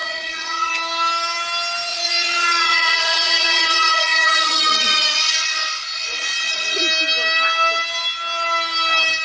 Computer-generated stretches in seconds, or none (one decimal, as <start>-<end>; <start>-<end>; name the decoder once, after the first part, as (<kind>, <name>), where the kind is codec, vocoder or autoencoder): 0.0-0.7 (vocoder, Vocos); 1.9-6.8